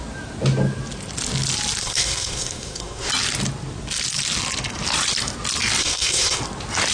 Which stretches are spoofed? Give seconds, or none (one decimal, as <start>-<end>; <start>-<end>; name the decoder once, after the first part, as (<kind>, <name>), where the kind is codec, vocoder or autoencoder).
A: 1.8-3.1 (codec, SNAC); 5.8-6.4